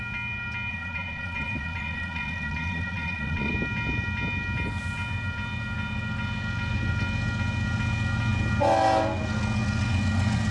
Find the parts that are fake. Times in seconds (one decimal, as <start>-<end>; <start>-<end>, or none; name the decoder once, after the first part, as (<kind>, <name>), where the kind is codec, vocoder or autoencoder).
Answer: 0.7-3.5 (vocoder, Vocos)